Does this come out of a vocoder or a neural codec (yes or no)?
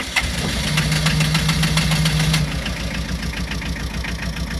no